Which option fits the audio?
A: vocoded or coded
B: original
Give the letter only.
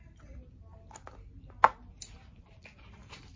B